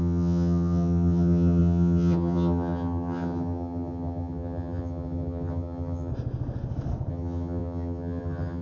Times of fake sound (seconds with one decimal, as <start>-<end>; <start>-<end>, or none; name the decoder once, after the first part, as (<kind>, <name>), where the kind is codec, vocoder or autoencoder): 0.0-6.1 (vocoder, HiFi-GAN); 7.1-8.6